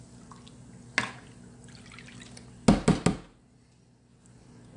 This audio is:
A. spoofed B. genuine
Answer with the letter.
B